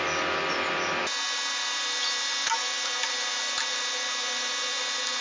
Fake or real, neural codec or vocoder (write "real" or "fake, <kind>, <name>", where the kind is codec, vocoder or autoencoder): real